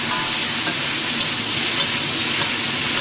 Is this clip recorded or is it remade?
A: recorded